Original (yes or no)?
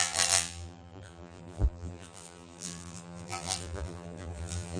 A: no